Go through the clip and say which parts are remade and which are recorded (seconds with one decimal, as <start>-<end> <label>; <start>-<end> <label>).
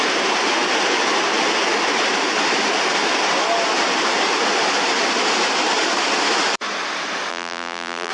0.0-7.3 recorded; 7.3-8.1 remade